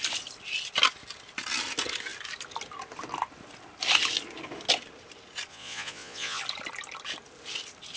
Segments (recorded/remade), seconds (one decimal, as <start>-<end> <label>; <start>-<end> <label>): 0.0-5.5 recorded; 5.5-6.4 remade; 6.4-8.0 recorded